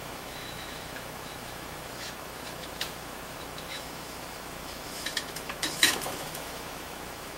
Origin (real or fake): fake